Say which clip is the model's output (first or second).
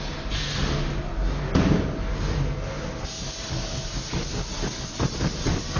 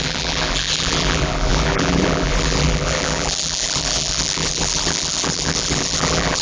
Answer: second